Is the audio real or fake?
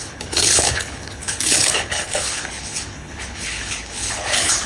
fake